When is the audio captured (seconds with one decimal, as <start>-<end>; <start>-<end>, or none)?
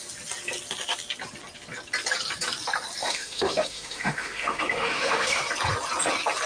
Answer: 0.0-3.0; 5.4-6.5